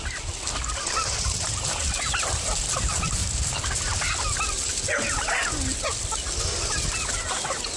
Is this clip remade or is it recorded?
recorded